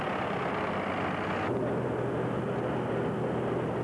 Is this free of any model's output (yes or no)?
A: yes